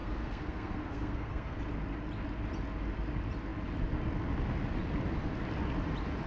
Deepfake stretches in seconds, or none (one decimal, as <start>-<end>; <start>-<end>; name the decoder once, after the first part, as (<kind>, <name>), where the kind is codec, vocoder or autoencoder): 0.0-1.6 (codec, SNAC)